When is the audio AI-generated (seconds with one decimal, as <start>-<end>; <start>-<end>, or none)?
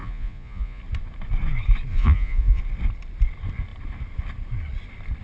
0.0-0.8; 1.9-2.6